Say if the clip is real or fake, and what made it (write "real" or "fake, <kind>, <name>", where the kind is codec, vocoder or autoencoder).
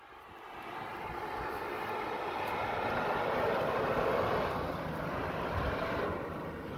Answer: real